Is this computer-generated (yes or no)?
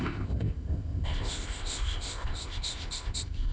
yes